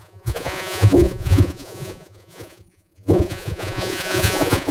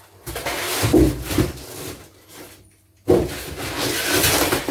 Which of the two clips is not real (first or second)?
first